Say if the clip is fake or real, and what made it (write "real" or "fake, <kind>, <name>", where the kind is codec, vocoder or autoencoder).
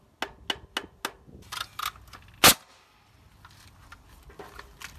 real